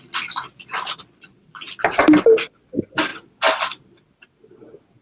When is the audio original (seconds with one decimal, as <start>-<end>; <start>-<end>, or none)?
0.0-5.0